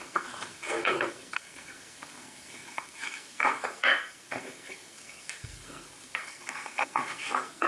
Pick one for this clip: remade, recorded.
remade